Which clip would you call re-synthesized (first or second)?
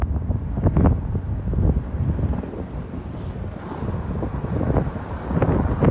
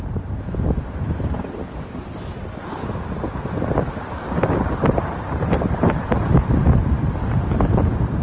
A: second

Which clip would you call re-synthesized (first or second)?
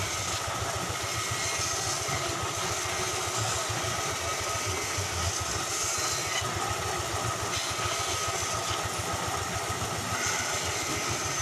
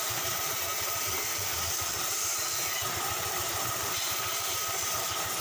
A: second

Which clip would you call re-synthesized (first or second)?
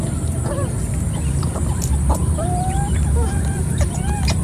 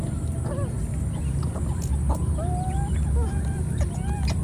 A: first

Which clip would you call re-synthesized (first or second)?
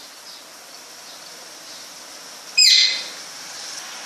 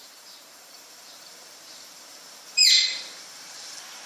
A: second